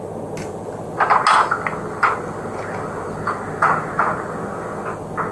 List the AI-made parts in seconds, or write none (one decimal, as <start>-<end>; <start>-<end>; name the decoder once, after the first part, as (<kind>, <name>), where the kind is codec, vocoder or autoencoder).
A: none

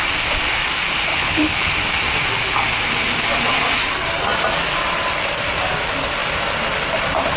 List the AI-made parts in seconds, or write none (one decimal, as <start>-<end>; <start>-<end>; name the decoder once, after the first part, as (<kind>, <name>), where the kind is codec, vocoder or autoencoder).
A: 1.1-1.7 (codec, HILCodec)